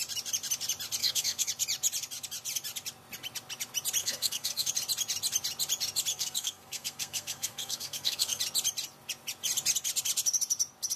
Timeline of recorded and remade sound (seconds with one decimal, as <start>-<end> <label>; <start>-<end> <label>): 0.0-1.0 recorded; 1.0-1.5 remade; 1.5-4.0 recorded; 4.0-4.7 remade; 4.7-6.1 recorded; 6.1-8.4 remade; 8.4-11.0 recorded

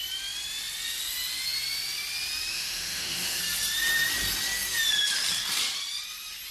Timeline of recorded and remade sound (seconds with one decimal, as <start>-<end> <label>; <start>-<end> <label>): 0.0-2.5 recorded; 2.5-3.4 remade; 3.4-6.5 recorded

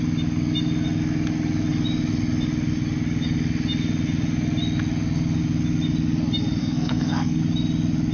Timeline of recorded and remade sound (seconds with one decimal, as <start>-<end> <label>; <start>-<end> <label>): 0.0-6.6 recorded; 6.6-7.4 remade; 7.4-8.1 recorded

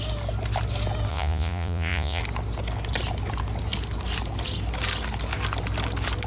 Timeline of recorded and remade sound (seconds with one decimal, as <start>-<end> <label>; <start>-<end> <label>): 0.0-1.1 recorded; 1.1-2.2 remade; 2.2-6.3 recorded

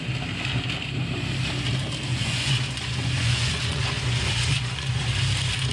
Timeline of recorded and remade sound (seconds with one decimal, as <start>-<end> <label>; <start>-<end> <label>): 0.0-2.1 recorded; 2.1-5.1 remade; 5.1-5.7 recorded